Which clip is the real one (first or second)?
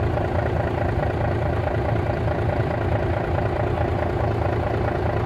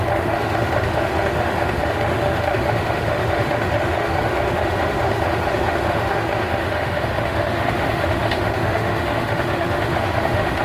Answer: first